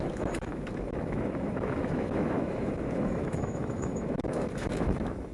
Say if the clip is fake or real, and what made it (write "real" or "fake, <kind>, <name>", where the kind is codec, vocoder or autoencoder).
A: fake, autoencoder, DAC-VAE